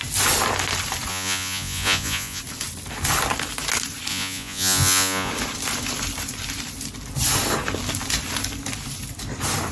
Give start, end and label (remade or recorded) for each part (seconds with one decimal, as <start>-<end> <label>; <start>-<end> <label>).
0.0-1.1 recorded; 1.1-2.4 remade; 2.4-4.1 recorded; 4.1-5.3 remade; 5.3-9.7 recorded